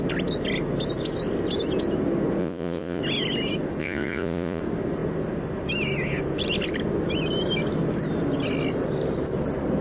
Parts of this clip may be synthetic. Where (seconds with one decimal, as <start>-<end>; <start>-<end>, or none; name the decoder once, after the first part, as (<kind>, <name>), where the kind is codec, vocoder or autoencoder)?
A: 2.4-3.0 (vocoder, Vocos); 3.8-4.6